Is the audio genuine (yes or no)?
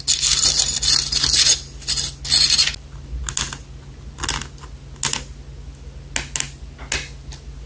yes